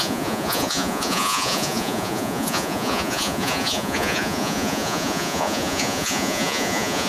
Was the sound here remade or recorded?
remade